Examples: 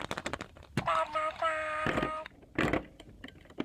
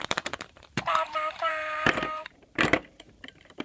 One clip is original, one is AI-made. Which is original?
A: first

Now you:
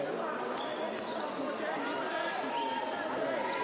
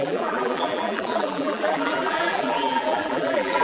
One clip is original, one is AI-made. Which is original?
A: first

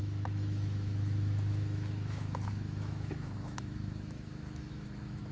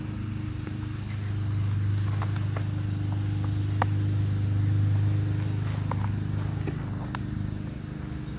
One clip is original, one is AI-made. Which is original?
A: second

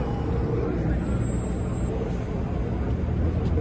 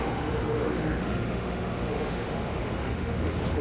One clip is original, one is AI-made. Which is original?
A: first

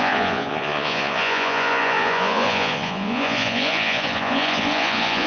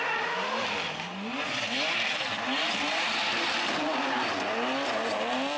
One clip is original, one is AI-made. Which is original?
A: second